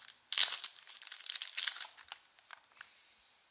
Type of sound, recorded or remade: recorded